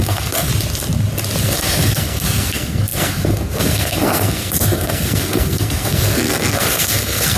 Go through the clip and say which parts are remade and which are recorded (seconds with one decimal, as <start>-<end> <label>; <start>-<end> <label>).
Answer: 0.0-0.5 remade; 0.5-1.4 recorded; 1.4-7.4 remade